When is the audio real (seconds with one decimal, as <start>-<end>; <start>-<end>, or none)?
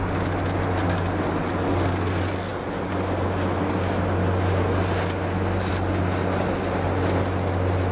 0.0-7.9